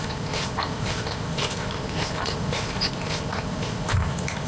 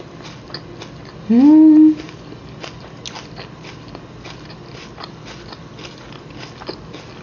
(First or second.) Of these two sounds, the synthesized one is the first